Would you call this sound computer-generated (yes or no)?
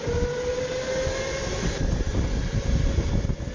no